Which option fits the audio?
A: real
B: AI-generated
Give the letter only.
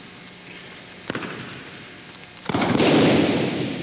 A